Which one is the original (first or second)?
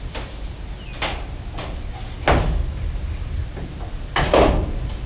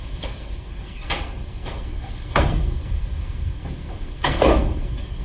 first